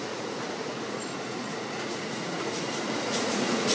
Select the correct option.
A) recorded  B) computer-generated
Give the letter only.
B